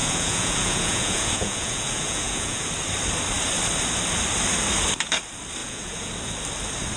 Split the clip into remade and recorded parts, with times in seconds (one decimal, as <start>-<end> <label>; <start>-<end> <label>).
0.0-2.7 remade; 2.7-5.6 recorded; 5.6-6.1 remade; 6.1-7.0 recorded